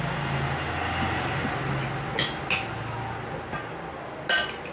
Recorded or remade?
recorded